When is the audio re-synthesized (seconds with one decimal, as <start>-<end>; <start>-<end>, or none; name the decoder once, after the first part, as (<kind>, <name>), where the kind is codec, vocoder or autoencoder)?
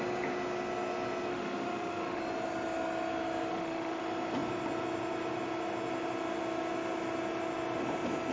1.3-2.2 (autoencoder, DAC-VAE); 3.5-4.0